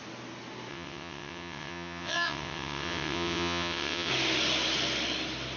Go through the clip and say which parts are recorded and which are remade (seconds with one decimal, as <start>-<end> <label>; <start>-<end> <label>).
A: 0.0-0.7 recorded; 0.7-4.1 remade; 4.1-5.6 recorded